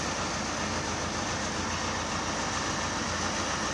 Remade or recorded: recorded